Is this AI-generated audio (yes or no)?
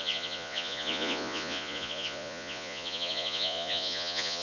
yes